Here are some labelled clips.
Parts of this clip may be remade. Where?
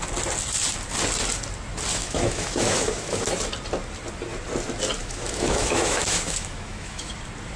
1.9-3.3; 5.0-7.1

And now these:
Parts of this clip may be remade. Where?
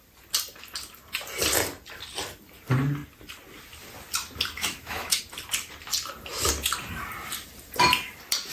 4.6-5.2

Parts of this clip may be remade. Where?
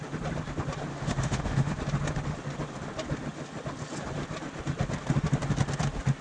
0.9-1.7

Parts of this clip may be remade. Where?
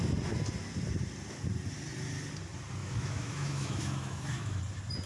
2.8-4.6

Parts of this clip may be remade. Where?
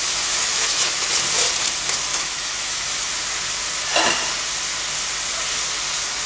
0.4-1.1; 2.1-3.1